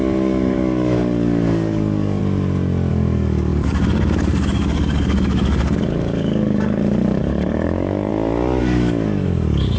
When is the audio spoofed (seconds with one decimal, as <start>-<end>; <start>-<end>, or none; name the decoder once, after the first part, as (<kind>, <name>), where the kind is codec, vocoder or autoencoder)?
0.0-2.2 (codec, DAC); 2.9-8.1; 8.6-9.8